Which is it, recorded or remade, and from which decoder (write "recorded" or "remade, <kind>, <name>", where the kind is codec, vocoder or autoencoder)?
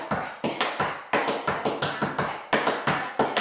recorded